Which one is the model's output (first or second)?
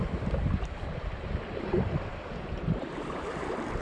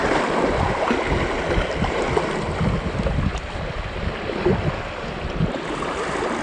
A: first